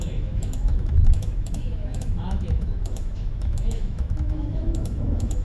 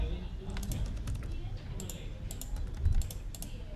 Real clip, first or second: second